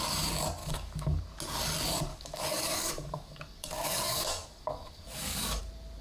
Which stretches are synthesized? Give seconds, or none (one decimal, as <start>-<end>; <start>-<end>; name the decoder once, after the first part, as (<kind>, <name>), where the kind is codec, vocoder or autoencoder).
0.6-1.2 (codec, DAC); 2.1-5.6